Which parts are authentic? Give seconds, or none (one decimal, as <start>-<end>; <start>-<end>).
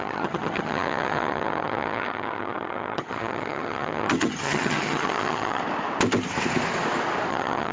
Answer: 5.6-7.3